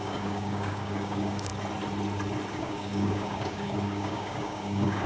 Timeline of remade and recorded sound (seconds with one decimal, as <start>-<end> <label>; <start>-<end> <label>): 0.0-1.5 remade; 1.5-2.5 recorded; 2.5-5.1 remade